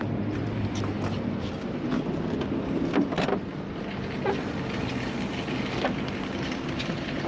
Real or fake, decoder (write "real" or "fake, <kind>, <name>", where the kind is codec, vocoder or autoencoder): real